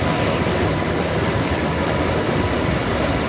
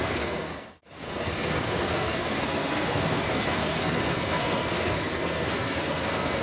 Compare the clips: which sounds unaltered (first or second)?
first